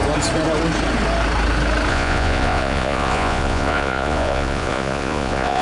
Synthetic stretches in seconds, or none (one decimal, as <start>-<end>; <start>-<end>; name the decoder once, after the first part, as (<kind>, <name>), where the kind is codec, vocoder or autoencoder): 1.9-5.6 (vocoder, Vocos)